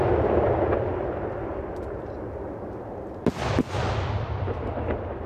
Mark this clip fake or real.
real